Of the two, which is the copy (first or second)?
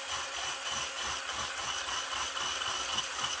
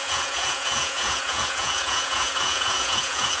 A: second